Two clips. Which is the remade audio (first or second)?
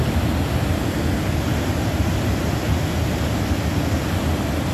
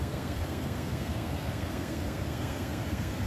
second